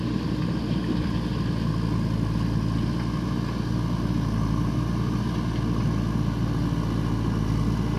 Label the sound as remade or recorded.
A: recorded